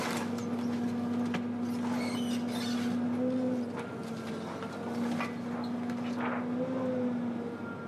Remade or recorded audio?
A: recorded